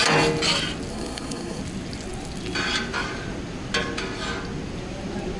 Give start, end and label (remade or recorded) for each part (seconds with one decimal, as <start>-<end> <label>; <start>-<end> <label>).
0.0-0.9 recorded; 0.9-1.6 remade; 1.6-5.4 recorded